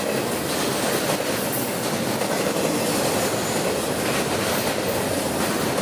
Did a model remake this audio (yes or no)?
no